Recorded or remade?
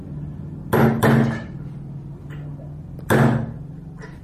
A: recorded